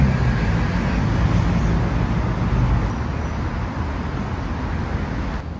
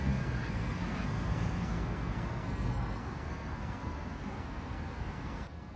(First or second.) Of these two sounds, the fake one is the second